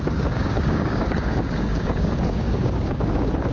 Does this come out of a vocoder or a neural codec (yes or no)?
yes